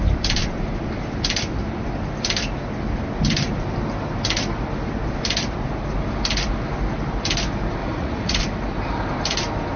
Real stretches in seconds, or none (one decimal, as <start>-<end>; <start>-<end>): 0.0-7.8; 8.4-9.8